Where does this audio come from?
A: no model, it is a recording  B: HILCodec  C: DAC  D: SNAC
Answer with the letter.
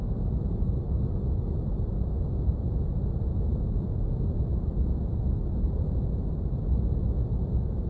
A